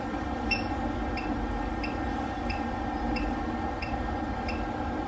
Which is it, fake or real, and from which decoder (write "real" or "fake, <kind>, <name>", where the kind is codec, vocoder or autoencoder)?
fake, vocoder, BigVGAN v2